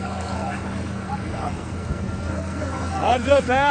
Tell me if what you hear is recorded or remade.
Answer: remade